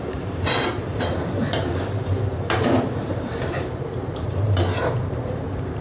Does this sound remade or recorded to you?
remade